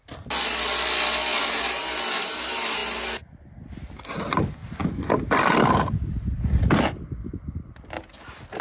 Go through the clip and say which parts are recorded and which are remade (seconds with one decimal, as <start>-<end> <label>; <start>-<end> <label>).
0.0-8.6 recorded